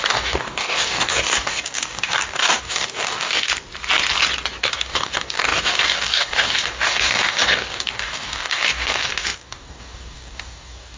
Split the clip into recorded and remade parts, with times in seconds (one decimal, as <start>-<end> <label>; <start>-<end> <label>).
0.0-3.5 remade; 3.5-4.6 recorded; 4.6-11.0 remade